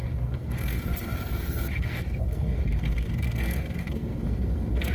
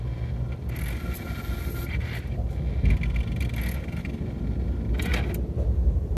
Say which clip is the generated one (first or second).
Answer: first